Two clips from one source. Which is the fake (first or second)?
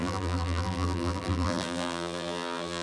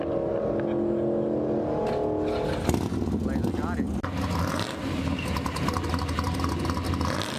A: first